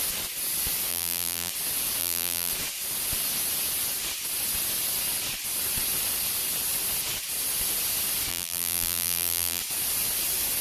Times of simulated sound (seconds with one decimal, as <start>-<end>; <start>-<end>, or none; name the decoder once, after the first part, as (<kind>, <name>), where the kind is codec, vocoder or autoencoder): 0.9-1.5 (vocoder, BigVGAN v2); 2.0-2.5; 8.3-9.6